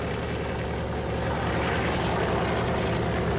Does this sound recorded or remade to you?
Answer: recorded